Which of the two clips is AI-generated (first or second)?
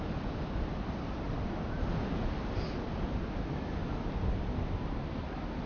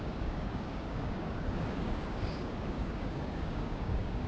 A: second